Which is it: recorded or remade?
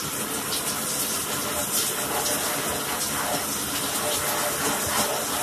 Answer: recorded